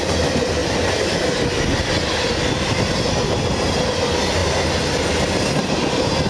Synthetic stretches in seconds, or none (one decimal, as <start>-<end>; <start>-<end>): none